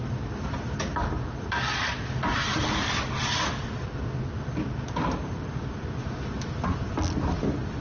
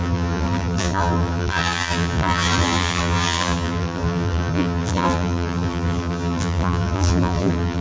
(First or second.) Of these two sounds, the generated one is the second